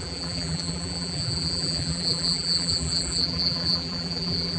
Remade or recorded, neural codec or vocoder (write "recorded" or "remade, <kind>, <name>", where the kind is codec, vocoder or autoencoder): remade, vocoder, BigVGAN v2